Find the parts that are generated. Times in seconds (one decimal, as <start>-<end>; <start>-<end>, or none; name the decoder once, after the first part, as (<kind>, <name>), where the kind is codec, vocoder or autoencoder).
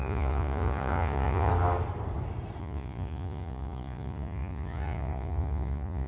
0.0-1.5 (vocoder, Vocos); 2.6-6.1